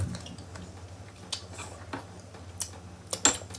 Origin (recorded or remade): recorded